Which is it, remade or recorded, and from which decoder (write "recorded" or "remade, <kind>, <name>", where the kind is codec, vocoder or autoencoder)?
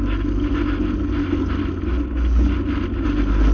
recorded